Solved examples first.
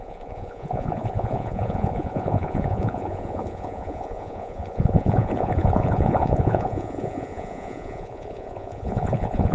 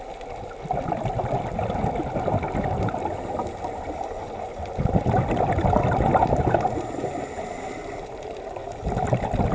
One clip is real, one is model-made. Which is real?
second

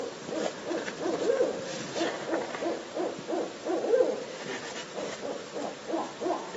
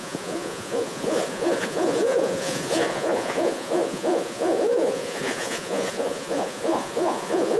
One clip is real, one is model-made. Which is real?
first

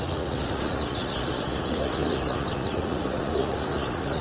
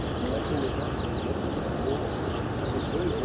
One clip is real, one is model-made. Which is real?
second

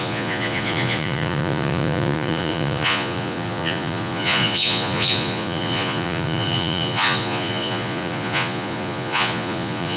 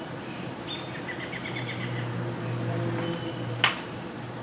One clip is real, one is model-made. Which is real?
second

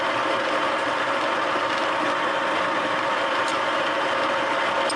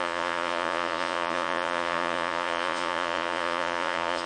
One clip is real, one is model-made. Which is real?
first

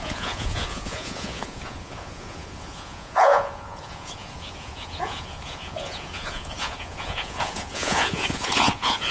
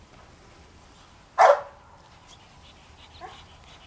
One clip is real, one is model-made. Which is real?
second